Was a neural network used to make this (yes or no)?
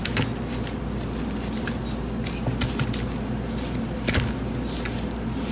no